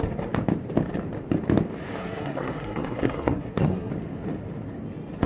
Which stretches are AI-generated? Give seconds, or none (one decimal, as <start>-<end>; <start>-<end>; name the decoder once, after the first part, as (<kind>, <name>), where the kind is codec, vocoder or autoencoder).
2.0-3.9 (codec, SNAC)